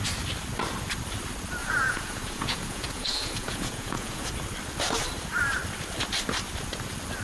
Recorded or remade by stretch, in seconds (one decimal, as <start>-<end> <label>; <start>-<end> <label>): 0.0-1.6 recorded; 1.6-4.3 remade; 4.3-7.2 recorded